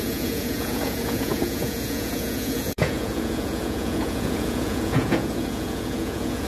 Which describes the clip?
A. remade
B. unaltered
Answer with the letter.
A